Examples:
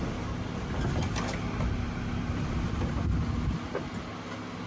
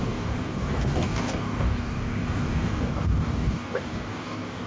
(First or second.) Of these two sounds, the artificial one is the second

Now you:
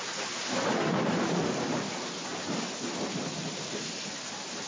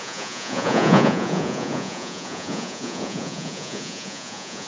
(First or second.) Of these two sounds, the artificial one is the second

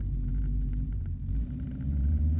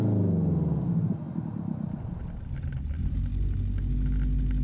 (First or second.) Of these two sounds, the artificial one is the first